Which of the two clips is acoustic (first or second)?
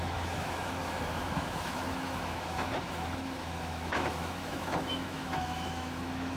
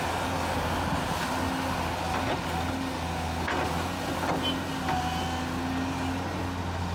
second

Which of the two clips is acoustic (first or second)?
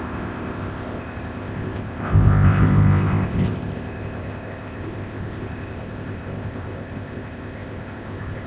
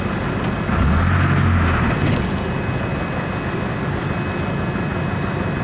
second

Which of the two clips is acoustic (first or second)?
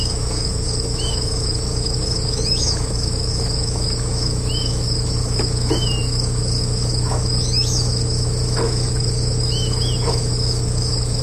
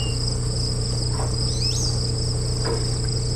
second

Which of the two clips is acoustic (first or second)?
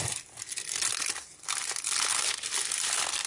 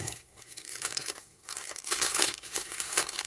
first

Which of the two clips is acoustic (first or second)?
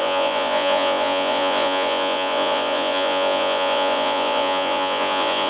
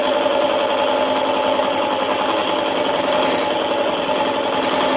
second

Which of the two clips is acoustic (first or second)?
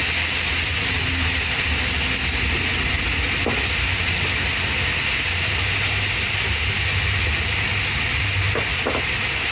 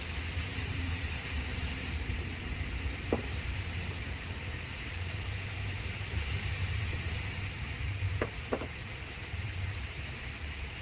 first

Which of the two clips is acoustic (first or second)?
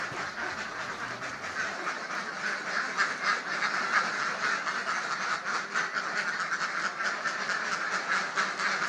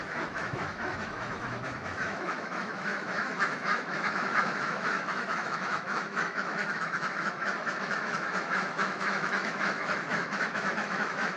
first